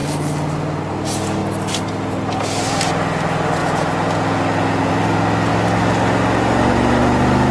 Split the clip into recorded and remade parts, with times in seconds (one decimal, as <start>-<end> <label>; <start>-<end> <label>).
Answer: 0.0-3.6 recorded; 3.6-4.9 remade; 4.9-7.5 recorded